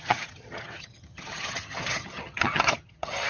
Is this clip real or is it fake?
fake